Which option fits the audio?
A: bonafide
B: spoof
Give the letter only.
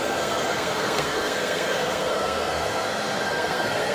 B